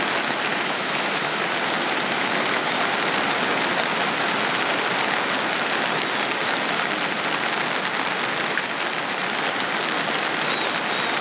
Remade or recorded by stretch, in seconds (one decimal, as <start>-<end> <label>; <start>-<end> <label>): 0.0-0.5 recorded; 0.5-1.4 remade; 1.4-11.2 recorded